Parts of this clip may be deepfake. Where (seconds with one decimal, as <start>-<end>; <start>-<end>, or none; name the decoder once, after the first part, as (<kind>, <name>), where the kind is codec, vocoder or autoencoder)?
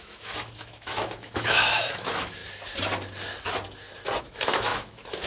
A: 0.0-2.4 (autoencoder, DAC-VAE); 4.2-5.3